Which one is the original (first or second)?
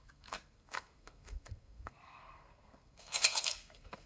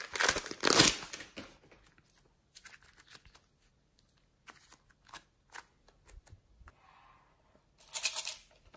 second